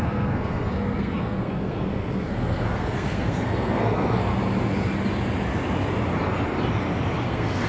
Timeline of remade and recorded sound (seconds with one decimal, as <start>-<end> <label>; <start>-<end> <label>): 0.0-4.3 remade; 4.3-7.2 recorded; 7.2-7.7 remade